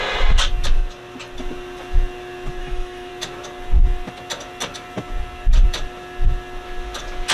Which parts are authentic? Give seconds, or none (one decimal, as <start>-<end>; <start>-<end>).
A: 0.0-2.6; 3.1-7.3